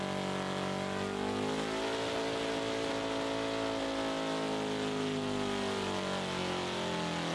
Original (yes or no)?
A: yes